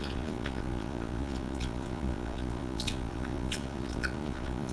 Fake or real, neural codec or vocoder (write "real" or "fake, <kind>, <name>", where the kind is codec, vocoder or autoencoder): fake, vocoder, Vocos